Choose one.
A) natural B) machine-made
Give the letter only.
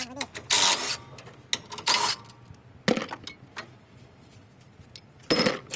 A